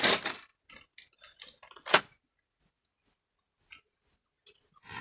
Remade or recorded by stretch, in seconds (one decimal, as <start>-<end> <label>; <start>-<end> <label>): 0.0-5.0 recorded